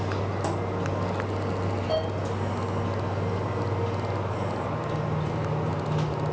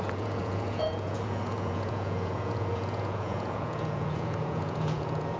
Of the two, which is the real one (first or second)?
first